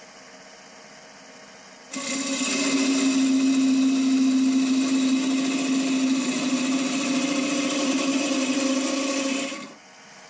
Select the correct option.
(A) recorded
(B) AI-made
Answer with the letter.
A